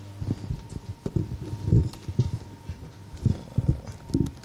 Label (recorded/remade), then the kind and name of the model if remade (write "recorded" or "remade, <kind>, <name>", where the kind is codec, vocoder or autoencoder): recorded